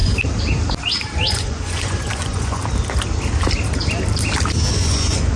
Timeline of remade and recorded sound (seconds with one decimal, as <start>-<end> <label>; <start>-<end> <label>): 0.0-1.3 recorded; 1.3-2.6 remade; 2.6-4.7 recorded; 4.7-5.4 remade